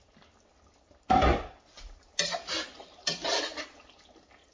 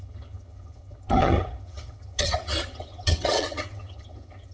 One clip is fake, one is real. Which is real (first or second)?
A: first